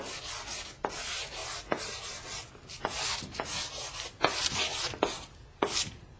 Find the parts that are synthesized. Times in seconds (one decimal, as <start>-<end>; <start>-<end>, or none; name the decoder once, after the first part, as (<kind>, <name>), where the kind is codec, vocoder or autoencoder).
none